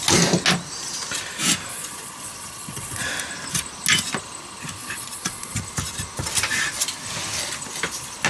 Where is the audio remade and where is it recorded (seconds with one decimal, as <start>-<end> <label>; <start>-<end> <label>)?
0.0-1.7 recorded; 1.7-3.1 remade; 3.1-4.8 recorded; 4.8-5.6 remade; 5.6-8.3 recorded